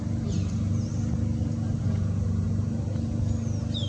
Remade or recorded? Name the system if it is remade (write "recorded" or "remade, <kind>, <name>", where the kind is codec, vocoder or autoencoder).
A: recorded